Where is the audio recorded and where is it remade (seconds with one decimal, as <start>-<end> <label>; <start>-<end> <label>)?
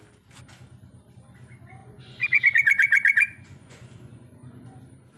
0.0-1.8 recorded; 1.8-4.8 remade; 4.8-5.2 recorded